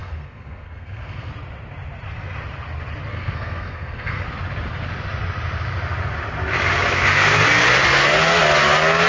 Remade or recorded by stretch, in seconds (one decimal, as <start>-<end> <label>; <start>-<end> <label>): 0.0-1.3 remade; 1.3-3.1 recorded; 3.1-4.2 remade; 4.2-9.1 recorded